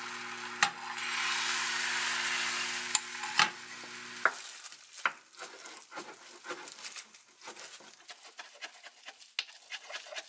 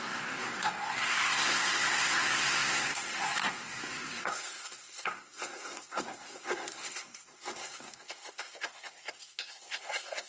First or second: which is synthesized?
second